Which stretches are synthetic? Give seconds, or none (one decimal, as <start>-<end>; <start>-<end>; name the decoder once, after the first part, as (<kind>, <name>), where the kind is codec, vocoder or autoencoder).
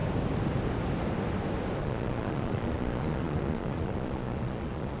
1.8-5.0 (vocoder, Vocos)